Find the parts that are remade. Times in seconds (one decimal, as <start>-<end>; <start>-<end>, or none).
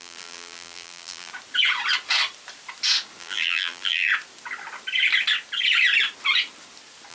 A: 0.0-1.3; 3.2-4.1